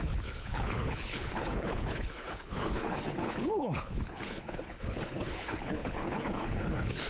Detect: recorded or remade remade